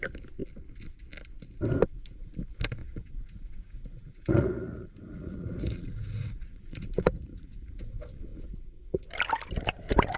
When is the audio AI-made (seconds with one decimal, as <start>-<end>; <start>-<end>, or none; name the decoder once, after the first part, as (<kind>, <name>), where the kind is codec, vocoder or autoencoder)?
2.8-7.7 (vocoder, Vocos); 8.3-9.1